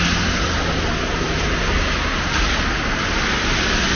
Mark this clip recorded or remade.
recorded